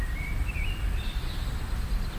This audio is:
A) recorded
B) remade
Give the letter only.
A